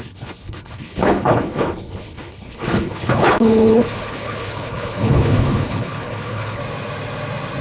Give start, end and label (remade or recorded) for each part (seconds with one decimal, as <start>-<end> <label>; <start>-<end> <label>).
0.0-6.6 remade; 6.6-7.6 recorded

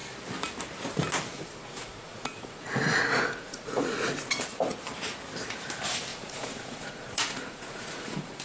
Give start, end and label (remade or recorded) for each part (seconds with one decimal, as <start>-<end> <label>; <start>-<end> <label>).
0.0-1.3 recorded; 1.3-4.4 remade; 4.4-6.1 recorded; 6.1-8.4 remade

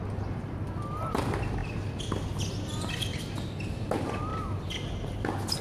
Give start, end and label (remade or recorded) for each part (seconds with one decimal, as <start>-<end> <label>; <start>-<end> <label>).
0.0-5.6 recorded

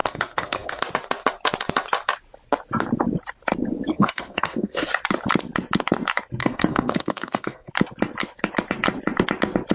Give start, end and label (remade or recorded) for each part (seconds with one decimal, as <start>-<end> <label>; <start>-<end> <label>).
0.0-0.8 remade; 0.8-3.9 recorded; 3.9-4.9 remade; 4.9-6.4 recorded; 6.4-7.7 remade; 7.7-9.7 recorded

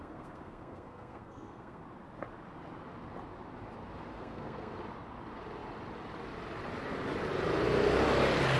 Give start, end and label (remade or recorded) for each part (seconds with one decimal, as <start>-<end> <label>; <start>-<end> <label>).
0.0-1.8 remade; 1.8-4.1 recorded; 4.1-4.8 remade; 4.8-8.6 recorded

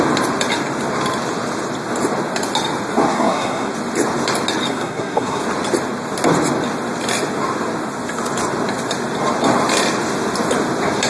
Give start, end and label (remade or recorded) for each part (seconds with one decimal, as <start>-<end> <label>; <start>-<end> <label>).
0.0-3.1 recorded; 3.1-3.7 remade; 3.7-4.7 recorded; 4.7-5.4 remade; 5.4-11.1 recorded

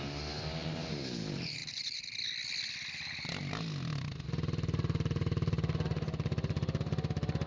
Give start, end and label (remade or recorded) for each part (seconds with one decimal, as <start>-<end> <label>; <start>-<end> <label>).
0.0-7.5 recorded